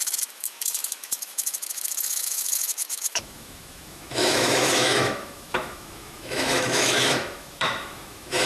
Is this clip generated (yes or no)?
yes